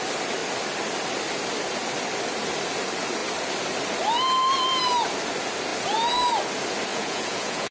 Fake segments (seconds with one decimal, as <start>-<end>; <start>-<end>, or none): 6.9-7.7